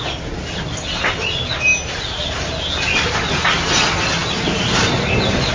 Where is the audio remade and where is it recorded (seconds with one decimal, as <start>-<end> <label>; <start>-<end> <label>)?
0.0-5.5 recorded